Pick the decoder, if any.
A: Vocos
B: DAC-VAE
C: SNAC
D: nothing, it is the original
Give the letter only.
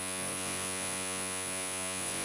A